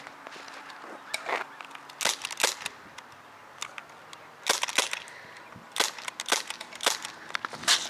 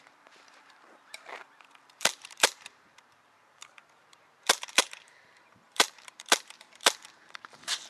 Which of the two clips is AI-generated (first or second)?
second